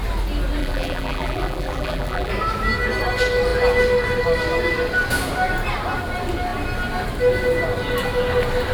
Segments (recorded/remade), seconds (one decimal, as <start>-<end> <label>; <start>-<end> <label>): 0.0-0.6 recorded; 0.6-2.3 remade; 2.3-8.7 recorded